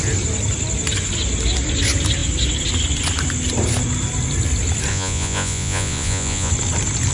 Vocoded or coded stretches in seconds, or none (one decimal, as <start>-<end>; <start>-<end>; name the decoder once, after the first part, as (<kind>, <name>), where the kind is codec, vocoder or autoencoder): 4.9-6.5 (vocoder, Vocos)